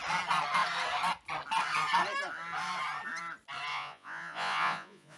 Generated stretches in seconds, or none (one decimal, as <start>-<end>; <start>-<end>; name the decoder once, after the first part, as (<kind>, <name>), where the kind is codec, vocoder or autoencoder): 3.7-5.2 (vocoder, Vocos)